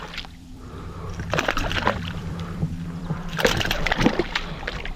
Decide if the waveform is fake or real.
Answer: fake